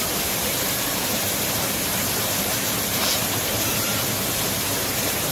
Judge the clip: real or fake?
fake